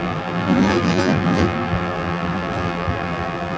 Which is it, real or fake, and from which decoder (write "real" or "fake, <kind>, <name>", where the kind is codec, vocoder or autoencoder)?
fake, vocoder, BigVGAN v2